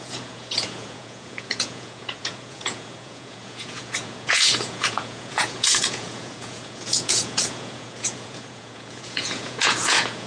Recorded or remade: remade